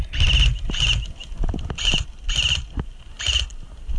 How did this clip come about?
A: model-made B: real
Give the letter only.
B